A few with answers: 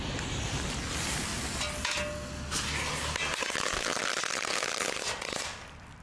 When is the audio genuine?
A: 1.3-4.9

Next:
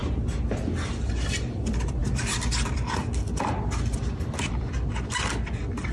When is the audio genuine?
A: 0.0-1.0

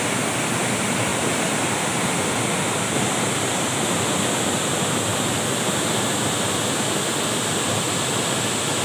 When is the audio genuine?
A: 0.0-1.1; 1.9-8.8

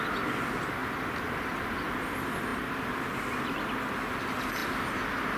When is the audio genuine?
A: 0.0-5.4

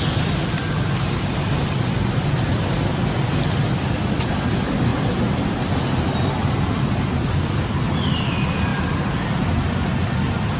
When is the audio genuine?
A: 0.0-10.6

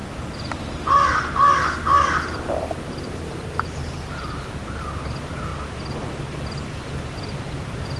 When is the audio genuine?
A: 0.0-0.6; 1.1-2.1; 5.5-7.5

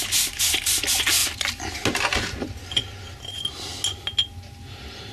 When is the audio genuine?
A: 0.0-5.1